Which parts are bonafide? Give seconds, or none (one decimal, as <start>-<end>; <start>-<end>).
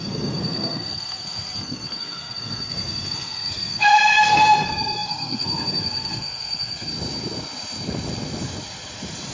6.9-9.3